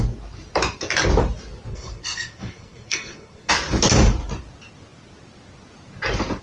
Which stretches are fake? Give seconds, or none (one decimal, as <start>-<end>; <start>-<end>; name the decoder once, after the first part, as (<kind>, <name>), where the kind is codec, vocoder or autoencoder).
1.7-3.5 (codec, SNAC)